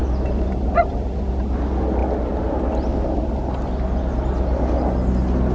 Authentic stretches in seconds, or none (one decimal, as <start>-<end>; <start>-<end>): 0.0-5.5